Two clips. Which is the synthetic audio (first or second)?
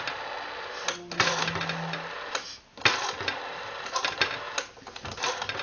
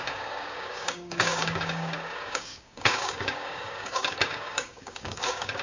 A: second